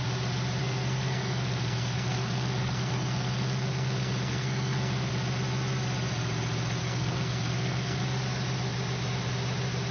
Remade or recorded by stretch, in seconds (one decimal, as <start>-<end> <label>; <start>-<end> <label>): 0.0-0.6 recorded; 0.6-5.1 remade; 5.1-6.8 recorded; 6.8-8.0 remade; 8.0-9.9 recorded